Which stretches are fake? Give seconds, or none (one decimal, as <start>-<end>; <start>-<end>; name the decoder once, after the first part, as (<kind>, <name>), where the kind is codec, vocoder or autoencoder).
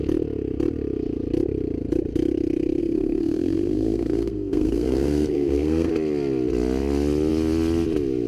2.8-5.9 (codec, SNAC)